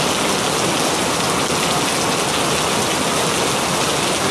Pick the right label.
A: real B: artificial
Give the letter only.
A